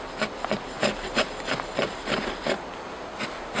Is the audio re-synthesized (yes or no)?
no